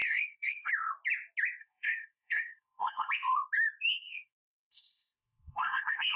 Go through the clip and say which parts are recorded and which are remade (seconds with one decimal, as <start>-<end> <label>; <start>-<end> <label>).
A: 0.0-0.7 remade; 0.7-1.6 recorded; 1.6-3.1 remade; 3.1-3.9 recorded; 3.9-6.2 remade